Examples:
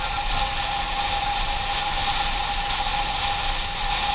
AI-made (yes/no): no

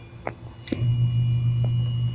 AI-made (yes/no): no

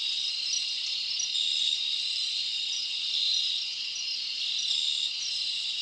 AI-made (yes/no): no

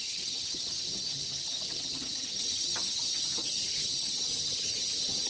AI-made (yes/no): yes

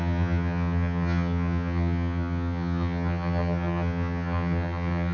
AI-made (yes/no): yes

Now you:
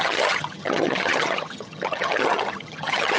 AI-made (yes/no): yes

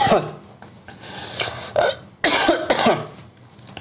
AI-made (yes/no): no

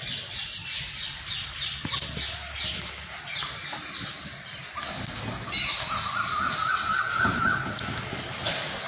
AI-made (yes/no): no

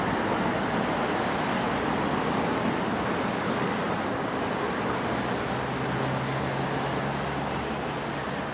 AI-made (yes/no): no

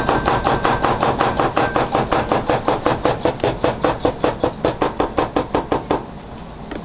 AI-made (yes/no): no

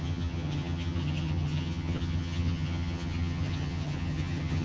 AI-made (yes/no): yes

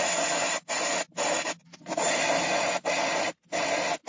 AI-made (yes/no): no